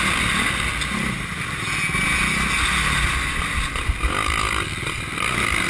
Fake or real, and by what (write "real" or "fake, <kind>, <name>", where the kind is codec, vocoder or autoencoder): real